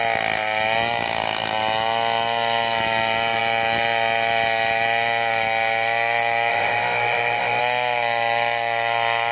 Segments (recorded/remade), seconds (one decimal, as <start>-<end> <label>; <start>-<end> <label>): 0.0-6.5 recorded; 6.5-7.6 remade; 7.6-9.3 recorded